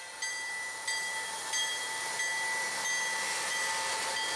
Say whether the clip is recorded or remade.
recorded